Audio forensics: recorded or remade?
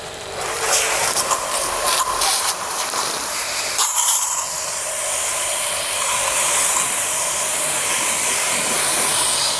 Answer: remade